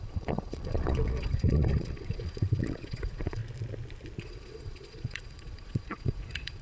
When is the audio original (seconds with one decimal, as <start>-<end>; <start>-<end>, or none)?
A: 3.4-4.2